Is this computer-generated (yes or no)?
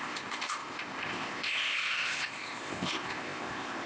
yes